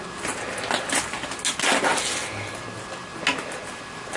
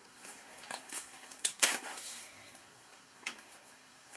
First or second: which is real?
first